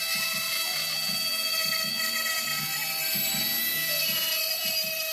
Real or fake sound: real